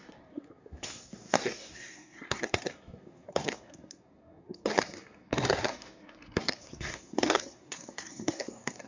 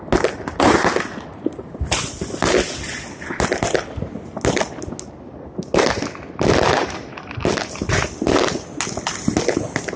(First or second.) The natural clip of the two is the second